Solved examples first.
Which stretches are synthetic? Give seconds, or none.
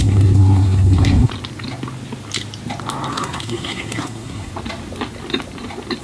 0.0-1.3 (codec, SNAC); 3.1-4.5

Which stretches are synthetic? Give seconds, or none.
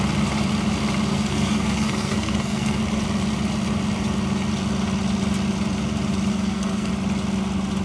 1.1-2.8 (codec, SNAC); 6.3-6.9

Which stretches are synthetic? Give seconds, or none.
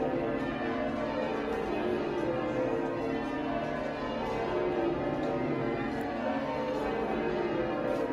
5.5-6.8 (codec, SNAC)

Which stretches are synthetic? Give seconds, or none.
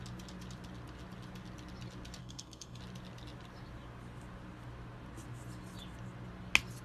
2.2-2.8 (codec, SNAC)